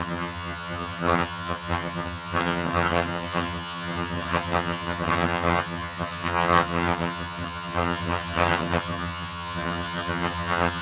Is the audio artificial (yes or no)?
yes